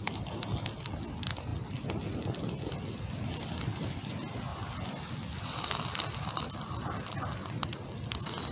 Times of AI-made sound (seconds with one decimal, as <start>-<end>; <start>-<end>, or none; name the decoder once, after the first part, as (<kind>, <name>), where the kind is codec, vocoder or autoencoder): none